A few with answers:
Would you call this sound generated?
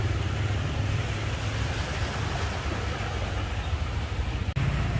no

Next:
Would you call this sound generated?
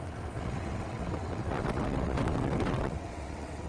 yes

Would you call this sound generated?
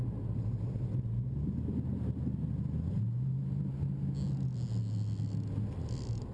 no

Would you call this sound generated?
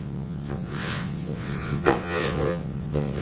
yes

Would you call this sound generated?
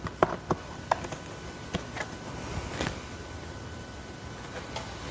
no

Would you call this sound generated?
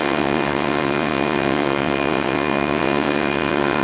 yes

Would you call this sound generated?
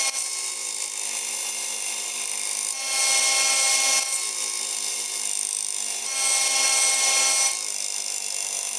no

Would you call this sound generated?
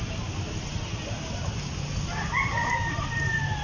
no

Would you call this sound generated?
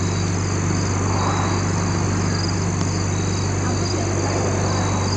no